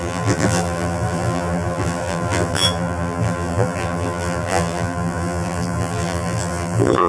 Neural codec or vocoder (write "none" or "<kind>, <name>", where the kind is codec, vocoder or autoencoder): vocoder, BigVGAN v2